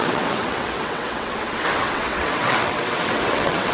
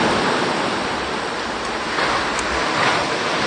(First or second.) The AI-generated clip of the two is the first